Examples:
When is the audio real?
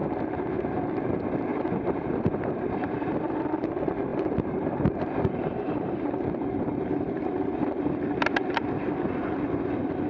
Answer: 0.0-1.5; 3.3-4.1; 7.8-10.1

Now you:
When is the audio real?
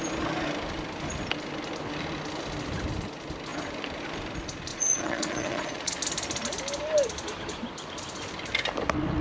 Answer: 0.0-4.7; 6.0-9.2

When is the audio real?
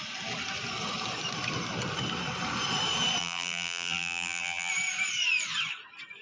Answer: 0.0-3.2; 4.7-6.2